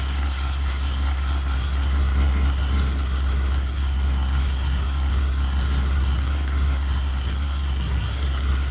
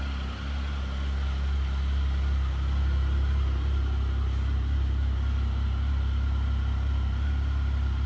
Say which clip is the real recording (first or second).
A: second